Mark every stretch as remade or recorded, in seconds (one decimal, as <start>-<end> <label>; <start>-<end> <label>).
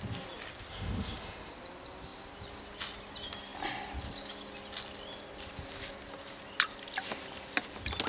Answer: 0.0-0.7 recorded; 0.7-1.5 remade; 1.5-8.1 recorded